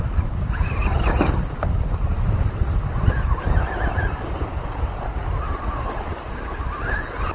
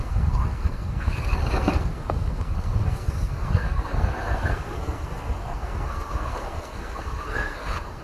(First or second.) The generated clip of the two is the second